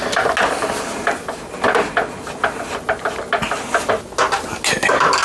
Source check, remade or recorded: recorded